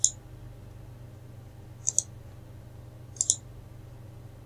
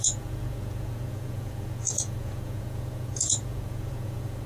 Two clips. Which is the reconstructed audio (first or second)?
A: second